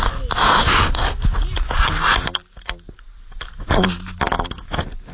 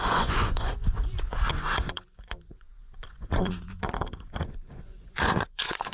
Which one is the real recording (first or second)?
first